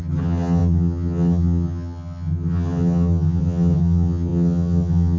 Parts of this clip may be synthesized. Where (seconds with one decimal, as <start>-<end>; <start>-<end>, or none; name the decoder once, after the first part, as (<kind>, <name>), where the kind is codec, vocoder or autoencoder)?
0.0-5.2 (vocoder, HiFi-GAN)